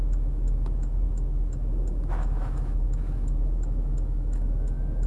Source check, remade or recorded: remade